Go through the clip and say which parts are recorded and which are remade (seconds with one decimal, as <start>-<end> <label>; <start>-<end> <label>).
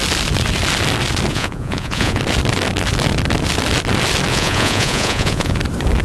0.0-1.3 recorded; 1.3-2.2 remade; 2.2-4.3 recorded; 4.3-5.6 remade; 5.6-6.0 recorded